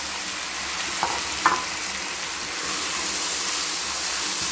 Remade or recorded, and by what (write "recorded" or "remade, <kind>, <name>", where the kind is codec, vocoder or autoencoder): recorded